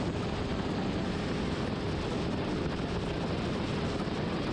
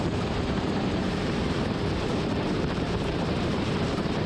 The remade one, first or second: second